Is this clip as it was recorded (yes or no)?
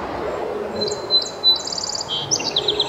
yes